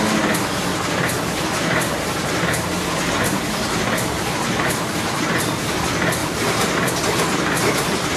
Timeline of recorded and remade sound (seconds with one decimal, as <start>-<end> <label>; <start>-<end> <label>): 0.0-0.7 recorded; 0.7-5.2 remade; 5.2-6.2 recorded; 6.2-6.9 remade; 6.9-8.2 recorded